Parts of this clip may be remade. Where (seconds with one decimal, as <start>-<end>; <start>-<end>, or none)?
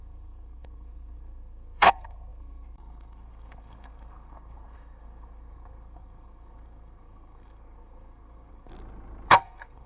0.0-8.7; 9.3-9.9